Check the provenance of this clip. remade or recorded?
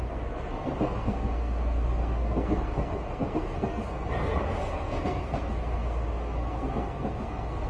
remade